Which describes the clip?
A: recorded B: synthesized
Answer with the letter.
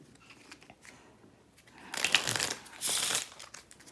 A